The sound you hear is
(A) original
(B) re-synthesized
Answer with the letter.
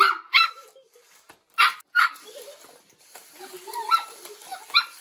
B